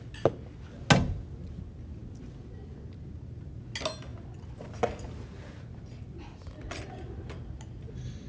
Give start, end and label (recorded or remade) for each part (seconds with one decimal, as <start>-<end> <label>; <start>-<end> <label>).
0.0-8.3 recorded